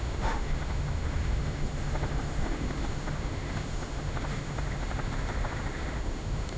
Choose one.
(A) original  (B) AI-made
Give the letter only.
B